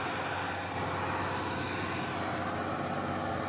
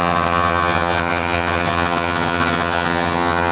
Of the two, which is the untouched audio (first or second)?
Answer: first